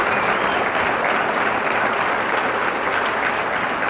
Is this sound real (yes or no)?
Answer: yes